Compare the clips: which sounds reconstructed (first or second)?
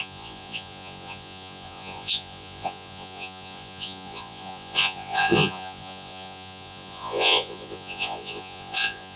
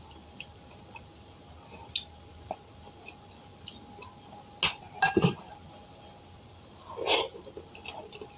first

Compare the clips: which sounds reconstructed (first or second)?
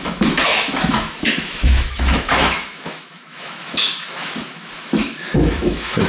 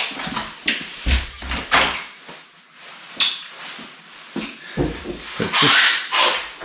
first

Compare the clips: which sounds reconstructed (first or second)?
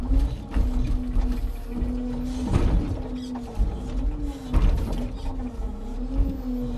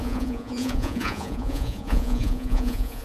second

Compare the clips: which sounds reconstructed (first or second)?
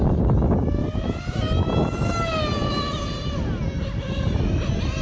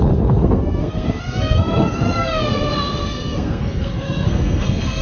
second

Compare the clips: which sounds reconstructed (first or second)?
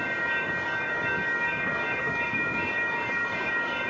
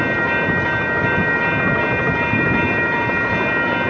first